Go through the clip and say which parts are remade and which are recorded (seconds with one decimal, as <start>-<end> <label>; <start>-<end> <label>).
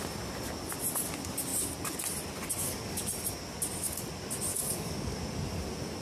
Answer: 0.0-2.6 recorded; 2.6-3.1 remade; 3.1-4.5 recorded; 4.5-5.2 remade; 5.2-6.0 recorded